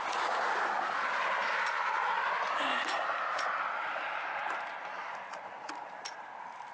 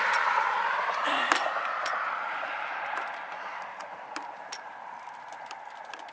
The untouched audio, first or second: first